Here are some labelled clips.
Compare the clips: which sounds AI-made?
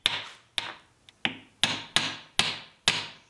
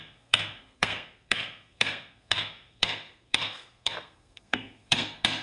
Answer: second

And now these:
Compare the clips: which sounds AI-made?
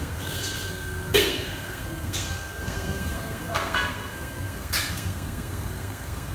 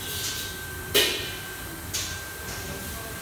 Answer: first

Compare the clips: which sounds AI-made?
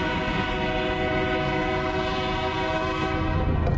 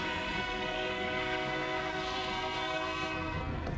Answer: second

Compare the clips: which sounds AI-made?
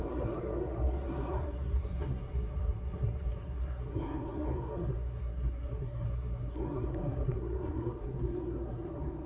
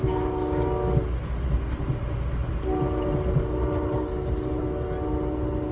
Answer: first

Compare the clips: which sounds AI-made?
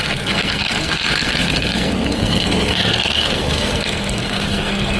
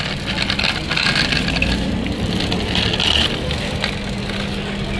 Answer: first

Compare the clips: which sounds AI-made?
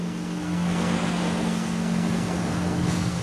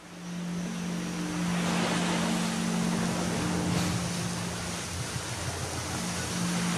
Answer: first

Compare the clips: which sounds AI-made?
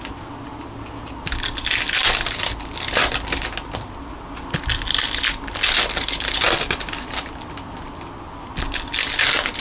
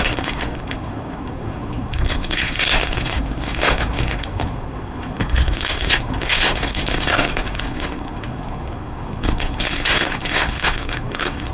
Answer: second